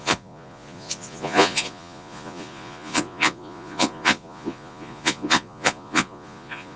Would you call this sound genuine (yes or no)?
no